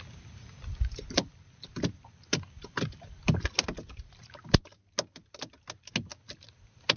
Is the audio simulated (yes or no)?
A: no